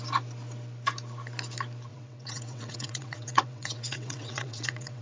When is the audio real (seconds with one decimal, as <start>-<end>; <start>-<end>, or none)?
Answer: 0.0-1.9